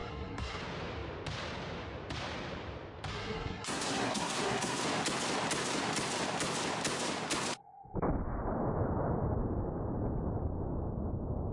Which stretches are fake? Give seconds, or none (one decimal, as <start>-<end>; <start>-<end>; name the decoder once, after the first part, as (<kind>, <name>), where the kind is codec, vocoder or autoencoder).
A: 0.0-0.6 (codec, SNAC); 3.1-4.8